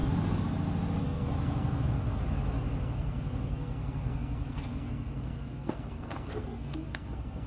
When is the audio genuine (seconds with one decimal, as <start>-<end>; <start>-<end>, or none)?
0.0-1.0; 2.2-2.8